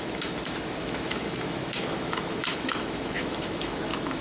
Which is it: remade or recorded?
remade